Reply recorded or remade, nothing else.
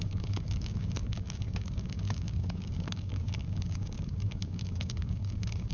remade